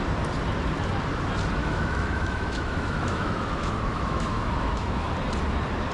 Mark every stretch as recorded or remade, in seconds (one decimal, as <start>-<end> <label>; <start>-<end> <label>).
0.0-1.6 recorded; 1.6-5.1 remade; 5.1-5.9 recorded